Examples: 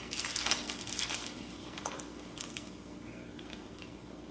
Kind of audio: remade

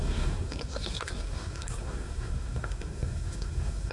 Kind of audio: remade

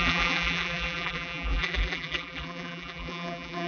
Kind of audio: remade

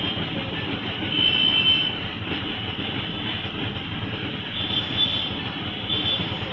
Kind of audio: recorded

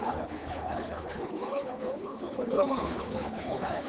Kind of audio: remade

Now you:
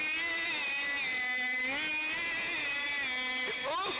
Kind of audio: recorded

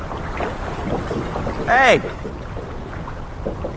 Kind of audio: recorded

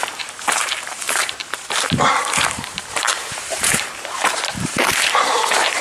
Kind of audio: remade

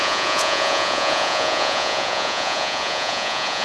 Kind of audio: remade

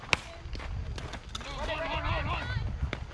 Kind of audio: recorded